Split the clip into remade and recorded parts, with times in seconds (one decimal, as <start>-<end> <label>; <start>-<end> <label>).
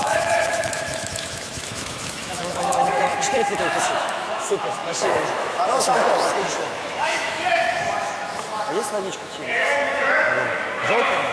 0.0-11.3 remade